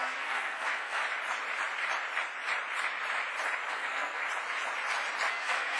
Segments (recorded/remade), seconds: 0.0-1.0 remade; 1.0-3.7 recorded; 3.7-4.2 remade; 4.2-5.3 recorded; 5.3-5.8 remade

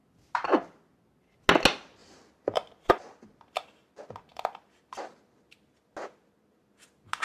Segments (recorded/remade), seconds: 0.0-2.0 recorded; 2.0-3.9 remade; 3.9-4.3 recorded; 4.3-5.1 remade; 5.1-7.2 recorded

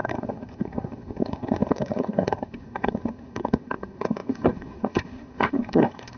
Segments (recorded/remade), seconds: 0.0-6.2 remade

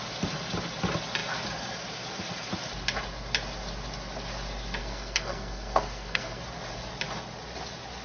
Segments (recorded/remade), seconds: 0.0-4.8 recorded; 4.8-6.4 remade; 6.4-8.0 recorded

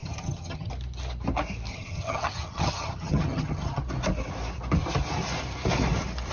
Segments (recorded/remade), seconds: 0.0-0.7 remade; 0.7-1.7 recorded; 1.7-3.8 remade; 3.8-6.3 recorded